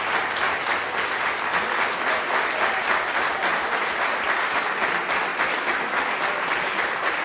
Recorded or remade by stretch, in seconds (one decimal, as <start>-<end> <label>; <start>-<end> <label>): 0.0-7.2 recorded